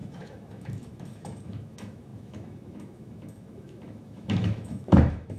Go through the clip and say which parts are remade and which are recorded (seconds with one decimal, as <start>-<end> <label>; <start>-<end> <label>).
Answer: 0.0-5.4 remade